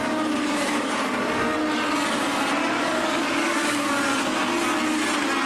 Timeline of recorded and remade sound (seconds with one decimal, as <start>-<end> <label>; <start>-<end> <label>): 0.0-0.4 recorded; 0.4-1.3 remade; 1.3-2.6 recorded; 2.6-3.9 remade; 3.9-5.5 recorded

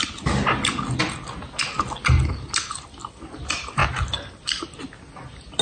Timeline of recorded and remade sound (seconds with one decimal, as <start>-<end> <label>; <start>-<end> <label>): 0.0-5.6 recorded

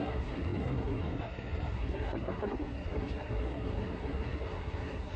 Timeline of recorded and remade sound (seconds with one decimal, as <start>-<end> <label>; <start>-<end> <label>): 0.0-5.2 remade

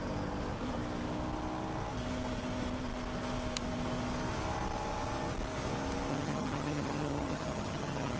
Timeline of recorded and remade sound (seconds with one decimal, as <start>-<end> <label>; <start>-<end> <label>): 0.0-6.1 recorded; 6.1-8.2 remade

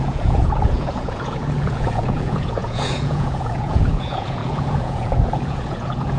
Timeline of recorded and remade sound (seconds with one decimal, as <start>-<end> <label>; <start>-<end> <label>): 0.0-6.2 remade

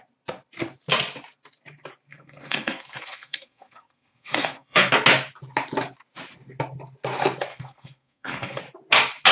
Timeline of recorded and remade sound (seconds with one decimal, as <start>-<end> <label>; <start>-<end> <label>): 0.0-2.1 recorded; 2.1-4.9 remade; 4.9-7.5 recorded; 7.5-8.6 remade; 8.6-9.3 recorded